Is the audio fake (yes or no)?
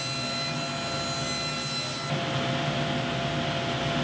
no